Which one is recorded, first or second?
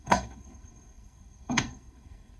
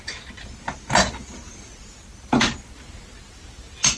second